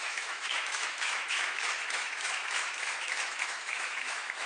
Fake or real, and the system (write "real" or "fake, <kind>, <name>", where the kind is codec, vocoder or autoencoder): fake, autoencoder, DAC-VAE